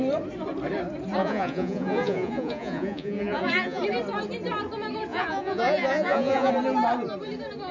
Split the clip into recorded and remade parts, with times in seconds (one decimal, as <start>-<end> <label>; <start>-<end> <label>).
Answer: 0.0-1.2 recorded; 1.2-3.8 remade; 3.8-5.1 recorded; 5.1-6.5 remade; 6.5-7.7 recorded